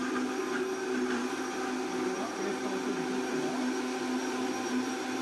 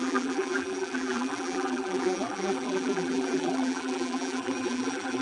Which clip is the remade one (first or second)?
second